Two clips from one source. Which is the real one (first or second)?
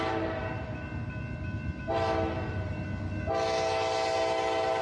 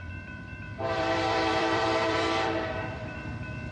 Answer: first